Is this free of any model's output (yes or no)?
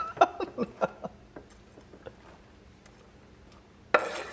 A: yes